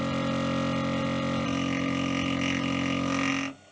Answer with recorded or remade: recorded